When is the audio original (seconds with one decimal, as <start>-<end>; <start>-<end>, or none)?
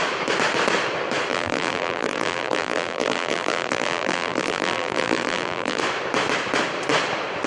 0.0-1.3; 5.8-7.5